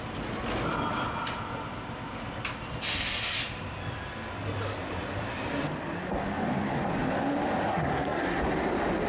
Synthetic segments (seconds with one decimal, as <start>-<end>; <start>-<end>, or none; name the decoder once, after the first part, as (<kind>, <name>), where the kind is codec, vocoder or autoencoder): 7.7-8.4 (codec, SNAC)